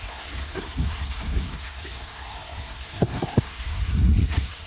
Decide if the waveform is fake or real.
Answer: fake